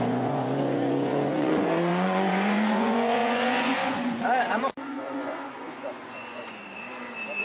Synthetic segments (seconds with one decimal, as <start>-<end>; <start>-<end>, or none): 0.0-6.6